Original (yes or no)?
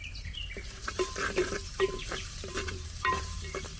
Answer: no